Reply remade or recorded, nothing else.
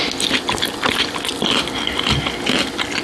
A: recorded